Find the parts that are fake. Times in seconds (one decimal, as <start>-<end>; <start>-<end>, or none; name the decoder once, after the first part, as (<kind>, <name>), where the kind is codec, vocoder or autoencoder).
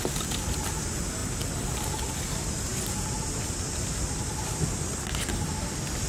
none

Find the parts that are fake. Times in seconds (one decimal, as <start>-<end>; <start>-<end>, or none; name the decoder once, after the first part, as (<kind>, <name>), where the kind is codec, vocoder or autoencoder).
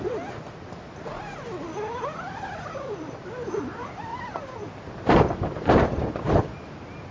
none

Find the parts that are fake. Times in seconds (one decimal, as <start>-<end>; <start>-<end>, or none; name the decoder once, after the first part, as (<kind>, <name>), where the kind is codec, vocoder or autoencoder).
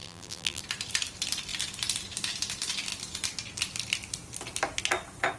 0.0-0.6 (vocoder, BigVGAN v2)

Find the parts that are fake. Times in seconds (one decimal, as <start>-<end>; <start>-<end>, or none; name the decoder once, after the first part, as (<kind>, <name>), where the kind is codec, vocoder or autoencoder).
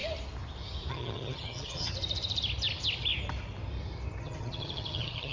0.9-1.9 (vocoder, HiFi-GAN); 4.2-5.3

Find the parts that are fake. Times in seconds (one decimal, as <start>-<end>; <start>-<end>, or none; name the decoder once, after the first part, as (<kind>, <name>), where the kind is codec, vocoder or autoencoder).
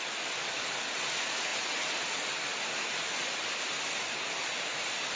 none